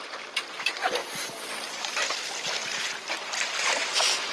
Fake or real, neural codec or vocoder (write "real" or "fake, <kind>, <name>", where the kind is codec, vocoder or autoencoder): real